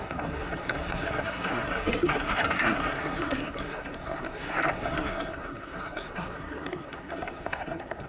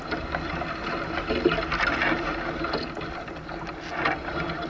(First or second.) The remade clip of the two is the first